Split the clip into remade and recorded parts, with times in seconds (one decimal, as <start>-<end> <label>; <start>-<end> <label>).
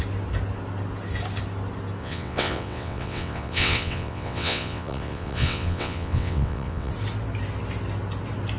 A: 0.0-2.0 recorded; 2.0-6.9 remade; 6.9-8.6 recorded